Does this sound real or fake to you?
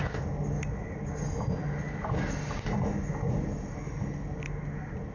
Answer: real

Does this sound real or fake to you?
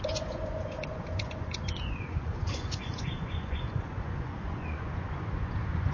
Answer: fake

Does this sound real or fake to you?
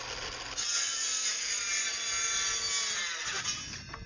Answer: real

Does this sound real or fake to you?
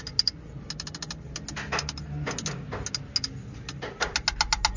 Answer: real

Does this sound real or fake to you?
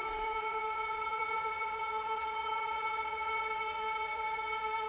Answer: fake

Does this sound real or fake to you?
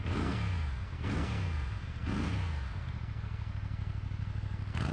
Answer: fake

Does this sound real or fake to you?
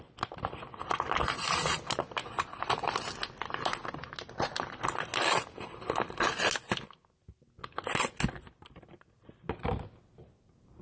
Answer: real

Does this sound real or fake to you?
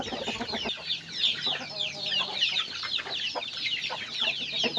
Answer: real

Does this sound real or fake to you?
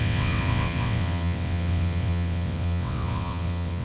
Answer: fake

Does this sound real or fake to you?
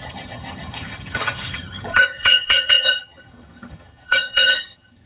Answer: fake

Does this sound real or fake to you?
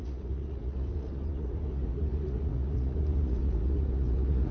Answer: fake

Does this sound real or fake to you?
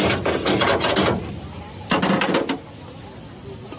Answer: real